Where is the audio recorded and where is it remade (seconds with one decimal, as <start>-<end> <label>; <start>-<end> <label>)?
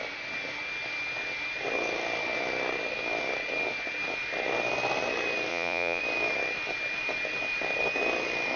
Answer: 0.0-5.5 recorded; 5.5-6.0 remade; 6.0-8.6 recorded